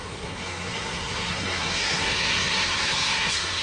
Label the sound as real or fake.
fake